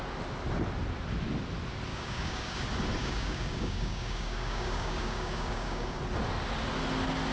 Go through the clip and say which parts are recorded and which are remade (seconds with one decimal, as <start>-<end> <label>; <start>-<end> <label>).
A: 0.0-1.9 recorded; 1.9-2.6 remade; 2.6-3.0 recorded; 3.0-6.0 remade; 6.0-7.3 recorded